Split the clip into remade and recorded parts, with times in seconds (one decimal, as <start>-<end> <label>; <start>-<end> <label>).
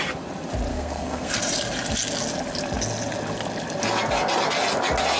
0.0-0.7 recorded; 0.7-1.3 remade; 1.3-5.2 recorded